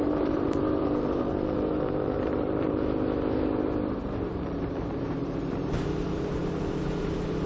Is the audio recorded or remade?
remade